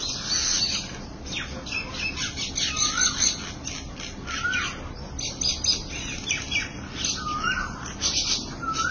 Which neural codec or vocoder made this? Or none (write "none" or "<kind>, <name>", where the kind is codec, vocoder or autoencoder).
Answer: none